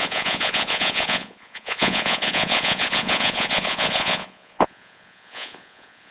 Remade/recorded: remade